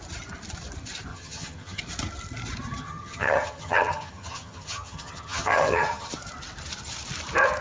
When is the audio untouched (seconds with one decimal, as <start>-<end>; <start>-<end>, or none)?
0.0-1.1; 1.8-2.8; 6.1-7.6